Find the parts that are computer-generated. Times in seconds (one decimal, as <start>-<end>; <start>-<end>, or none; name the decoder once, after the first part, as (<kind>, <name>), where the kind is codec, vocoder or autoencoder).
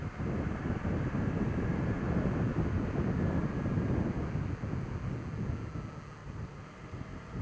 0.0-2.1 (vocoder, BigVGAN v2); 6.2-7.4